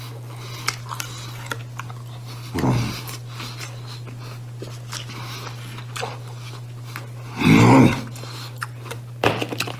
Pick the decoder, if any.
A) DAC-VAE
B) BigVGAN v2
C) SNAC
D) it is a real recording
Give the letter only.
D